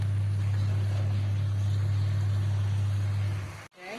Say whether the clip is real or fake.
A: real